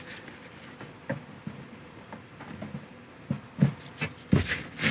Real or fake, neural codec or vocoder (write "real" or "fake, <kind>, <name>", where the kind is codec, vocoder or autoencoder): real